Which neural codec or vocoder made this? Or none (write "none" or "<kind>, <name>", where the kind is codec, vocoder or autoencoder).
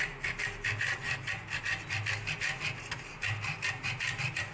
none